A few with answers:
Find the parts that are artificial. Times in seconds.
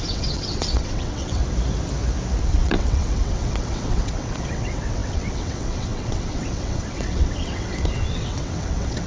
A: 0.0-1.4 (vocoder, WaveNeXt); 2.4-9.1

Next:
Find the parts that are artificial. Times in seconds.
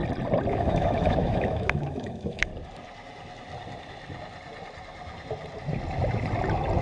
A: 0.5-2.5 (autoencoder, DAC-VAE)